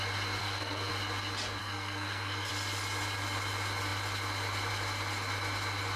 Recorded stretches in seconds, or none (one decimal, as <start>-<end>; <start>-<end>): 0.0-0.4; 0.9-1.6; 2.5-6.0